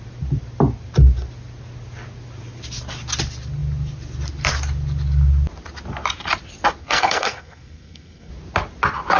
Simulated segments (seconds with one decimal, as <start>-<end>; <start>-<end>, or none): 6.8-8.3